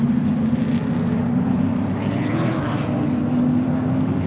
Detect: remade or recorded recorded